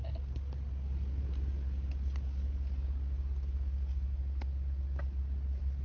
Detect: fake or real real